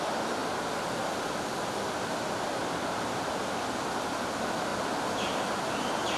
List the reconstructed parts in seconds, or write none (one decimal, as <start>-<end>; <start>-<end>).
2.6-3.4